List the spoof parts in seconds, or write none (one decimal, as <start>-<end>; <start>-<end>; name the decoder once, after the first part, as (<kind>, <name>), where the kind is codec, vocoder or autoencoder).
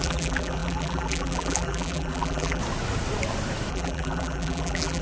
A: 0.0-2.6 (vocoder, BigVGAN v2); 3.7-5.0